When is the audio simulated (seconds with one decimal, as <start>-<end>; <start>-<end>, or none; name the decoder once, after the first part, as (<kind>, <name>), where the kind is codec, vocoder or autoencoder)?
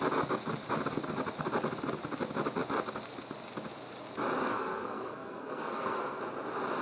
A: 4.5-6.2 (codec, SNAC)